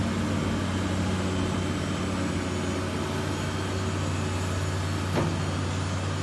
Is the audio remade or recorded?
recorded